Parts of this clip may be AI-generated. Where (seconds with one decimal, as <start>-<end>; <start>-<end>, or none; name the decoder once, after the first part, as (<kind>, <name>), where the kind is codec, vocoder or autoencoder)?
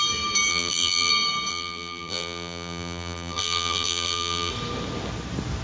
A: 0.5-1.1 (vocoder, BigVGAN v2); 1.5-4.5